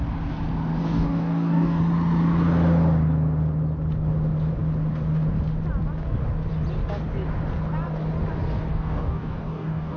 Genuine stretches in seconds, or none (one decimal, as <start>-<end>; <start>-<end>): 0.0-0.8; 1.8-8.7

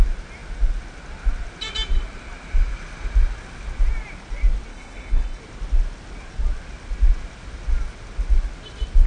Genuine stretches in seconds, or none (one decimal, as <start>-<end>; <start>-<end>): 0.0-4.7; 5.4-9.1